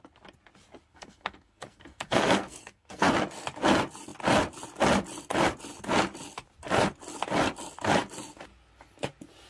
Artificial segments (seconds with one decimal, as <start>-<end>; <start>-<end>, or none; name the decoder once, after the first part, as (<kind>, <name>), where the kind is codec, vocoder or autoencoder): 0.9-3.1 (codec, SNAC)